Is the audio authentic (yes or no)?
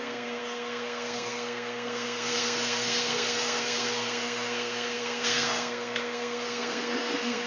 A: no